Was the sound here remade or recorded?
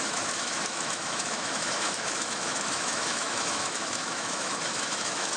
remade